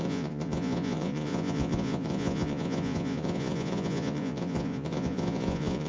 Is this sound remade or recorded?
remade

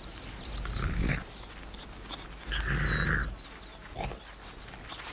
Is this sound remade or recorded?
recorded